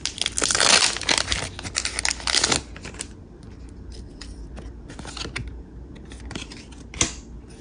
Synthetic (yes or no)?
no